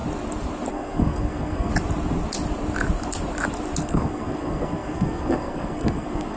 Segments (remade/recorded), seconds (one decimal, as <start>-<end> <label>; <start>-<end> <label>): 0.0-0.7 recorded; 0.7-1.7 remade; 1.7-3.8 recorded; 3.8-6.4 remade